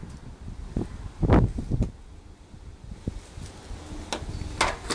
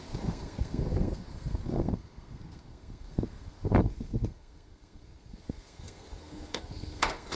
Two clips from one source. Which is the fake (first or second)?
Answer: second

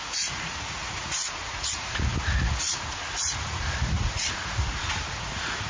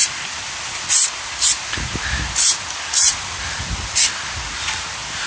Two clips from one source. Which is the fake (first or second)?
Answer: first